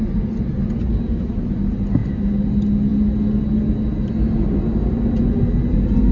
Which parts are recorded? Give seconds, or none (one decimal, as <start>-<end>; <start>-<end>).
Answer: 0.0-6.1